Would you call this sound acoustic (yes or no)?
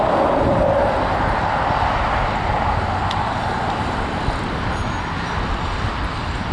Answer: yes